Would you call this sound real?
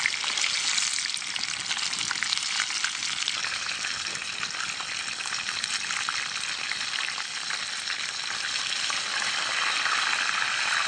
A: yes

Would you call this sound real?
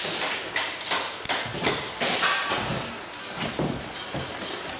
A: yes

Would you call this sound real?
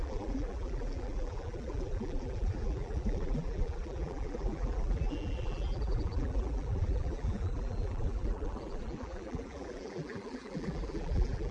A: no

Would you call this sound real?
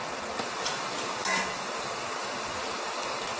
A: yes